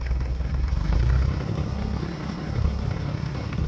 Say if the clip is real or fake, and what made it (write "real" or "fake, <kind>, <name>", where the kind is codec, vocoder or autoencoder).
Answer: fake, codec, SNAC